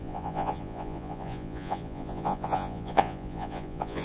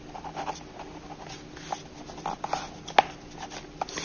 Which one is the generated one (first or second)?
first